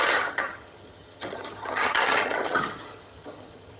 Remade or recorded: remade